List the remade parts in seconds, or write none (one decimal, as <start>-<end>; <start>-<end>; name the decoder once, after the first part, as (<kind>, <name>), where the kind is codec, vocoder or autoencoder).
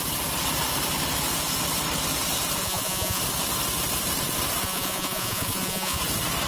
2.6-3.2 (vocoder, Vocos); 4.6-6.0